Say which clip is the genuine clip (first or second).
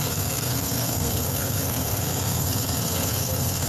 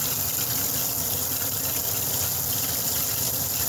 second